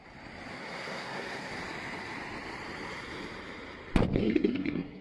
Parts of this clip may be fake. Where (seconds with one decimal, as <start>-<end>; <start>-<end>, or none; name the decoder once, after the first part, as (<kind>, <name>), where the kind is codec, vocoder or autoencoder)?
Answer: 0.5-1.5 (codec, SNAC); 4.2-5.0